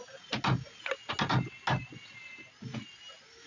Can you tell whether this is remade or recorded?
recorded